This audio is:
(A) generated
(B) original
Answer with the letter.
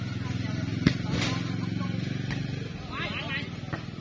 B